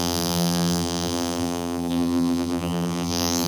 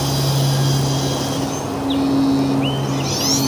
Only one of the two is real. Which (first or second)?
second